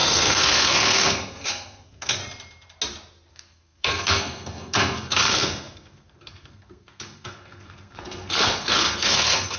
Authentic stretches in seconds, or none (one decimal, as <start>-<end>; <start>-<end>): 2.2-3.3